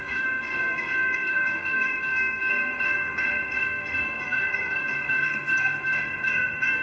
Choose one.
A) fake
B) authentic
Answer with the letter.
A